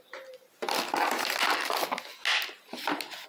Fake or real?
real